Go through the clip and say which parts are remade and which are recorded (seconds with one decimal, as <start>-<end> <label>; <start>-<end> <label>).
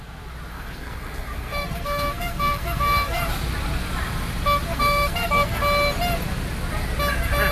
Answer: 0.0-0.5 recorded; 0.5-3.2 remade; 3.2-4.7 recorded; 4.7-5.6 remade; 5.6-7.5 recorded